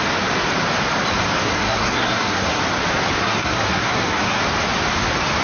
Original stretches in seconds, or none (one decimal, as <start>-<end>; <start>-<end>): 0.0-1.4; 2.6-3.2; 4.4-5.4